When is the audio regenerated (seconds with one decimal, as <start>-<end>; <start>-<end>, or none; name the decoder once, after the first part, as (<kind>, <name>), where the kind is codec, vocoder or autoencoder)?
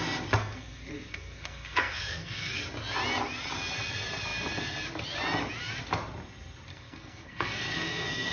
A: 0.4-2.6 (codec, SNAC); 6.7-8.3